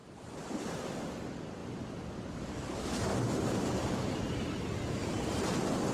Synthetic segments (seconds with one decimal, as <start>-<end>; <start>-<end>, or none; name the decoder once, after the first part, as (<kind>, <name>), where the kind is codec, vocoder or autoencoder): 0.0-1.0 (vocoder, BigVGAN v2); 3.8-4.4